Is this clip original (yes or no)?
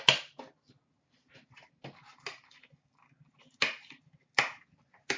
yes